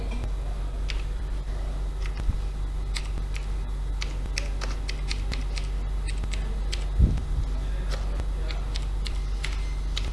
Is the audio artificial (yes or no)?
no